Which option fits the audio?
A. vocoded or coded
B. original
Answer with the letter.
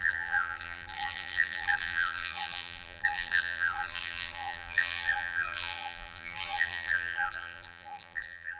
A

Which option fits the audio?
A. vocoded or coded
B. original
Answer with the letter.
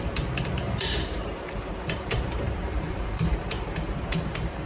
A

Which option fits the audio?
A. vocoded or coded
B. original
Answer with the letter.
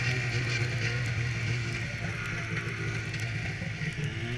B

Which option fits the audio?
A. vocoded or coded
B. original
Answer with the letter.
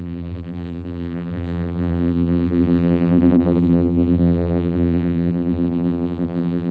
A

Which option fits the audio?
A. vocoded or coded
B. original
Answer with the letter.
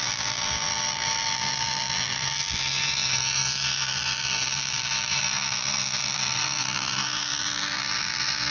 A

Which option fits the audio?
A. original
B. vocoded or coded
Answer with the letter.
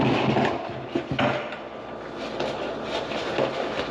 A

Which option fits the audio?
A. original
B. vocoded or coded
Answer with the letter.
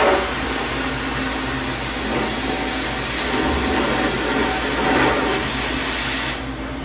A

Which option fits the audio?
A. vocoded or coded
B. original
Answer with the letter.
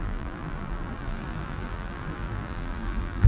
A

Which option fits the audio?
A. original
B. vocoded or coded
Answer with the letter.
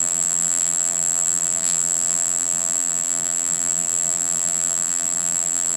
B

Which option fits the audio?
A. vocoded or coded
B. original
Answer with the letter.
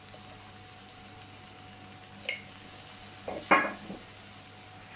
B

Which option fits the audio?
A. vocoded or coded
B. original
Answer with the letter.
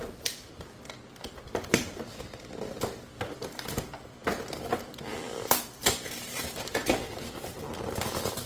A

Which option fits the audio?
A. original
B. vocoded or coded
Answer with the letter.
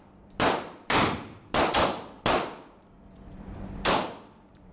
B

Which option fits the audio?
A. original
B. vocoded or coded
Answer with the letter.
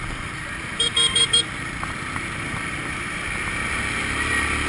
B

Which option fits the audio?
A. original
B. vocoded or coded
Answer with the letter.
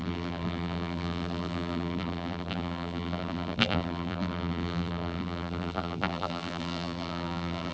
B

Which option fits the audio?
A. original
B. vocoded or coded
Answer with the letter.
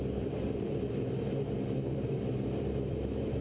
B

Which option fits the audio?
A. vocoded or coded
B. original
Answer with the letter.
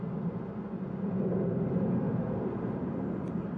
B